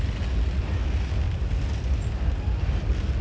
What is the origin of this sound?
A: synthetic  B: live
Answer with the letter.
B